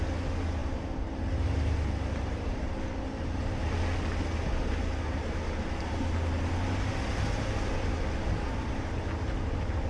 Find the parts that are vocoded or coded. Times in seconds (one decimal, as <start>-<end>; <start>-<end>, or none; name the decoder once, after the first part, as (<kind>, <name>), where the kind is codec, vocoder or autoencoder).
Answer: none